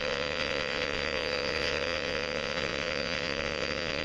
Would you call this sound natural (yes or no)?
no